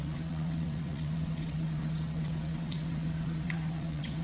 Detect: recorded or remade remade